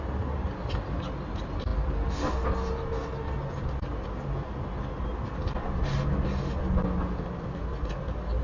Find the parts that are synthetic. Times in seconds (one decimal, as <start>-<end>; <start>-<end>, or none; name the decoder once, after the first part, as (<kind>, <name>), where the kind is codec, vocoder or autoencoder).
none